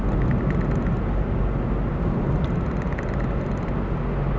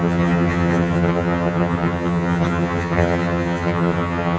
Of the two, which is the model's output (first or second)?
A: second